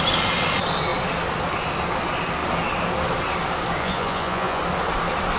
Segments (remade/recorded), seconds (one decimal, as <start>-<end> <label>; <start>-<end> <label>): 0.0-3.8 recorded; 3.8-4.6 remade; 4.6-5.4 recorded